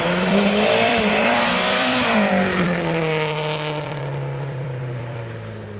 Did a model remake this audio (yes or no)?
yes